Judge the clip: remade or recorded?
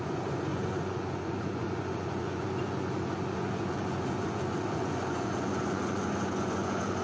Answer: remade